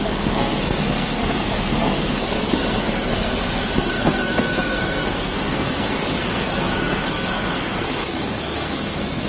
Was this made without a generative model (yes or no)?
no